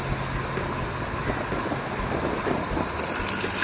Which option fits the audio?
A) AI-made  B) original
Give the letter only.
B